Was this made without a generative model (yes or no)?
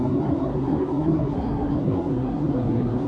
no